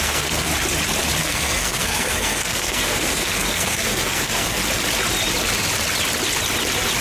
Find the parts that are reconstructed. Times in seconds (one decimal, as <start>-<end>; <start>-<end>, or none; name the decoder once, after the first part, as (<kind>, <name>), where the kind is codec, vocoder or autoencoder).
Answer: 0.0-0.5 (codec, SNAC); 1.2-4.6